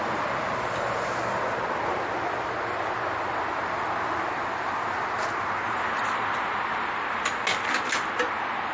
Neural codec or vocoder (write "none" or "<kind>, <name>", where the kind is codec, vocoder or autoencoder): none